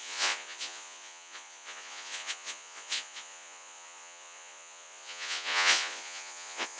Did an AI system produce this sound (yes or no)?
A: yes